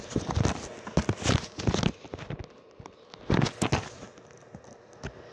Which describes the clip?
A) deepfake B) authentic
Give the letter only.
B